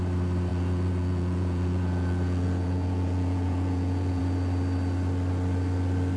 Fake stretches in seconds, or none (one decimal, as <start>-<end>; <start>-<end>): 0.5-4.2